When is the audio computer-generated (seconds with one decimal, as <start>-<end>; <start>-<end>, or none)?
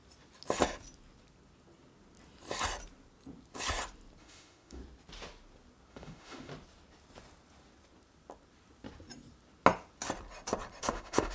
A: 4.2-4.8; 5.9-6.5; 10.8-11.3